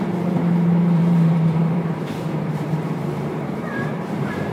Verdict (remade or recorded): remade